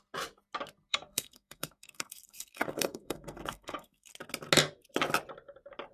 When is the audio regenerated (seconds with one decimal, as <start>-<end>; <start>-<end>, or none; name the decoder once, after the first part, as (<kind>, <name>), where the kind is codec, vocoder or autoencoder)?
0.9-4.1 (codec, SNAC)